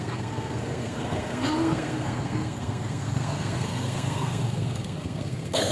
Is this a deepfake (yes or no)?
yes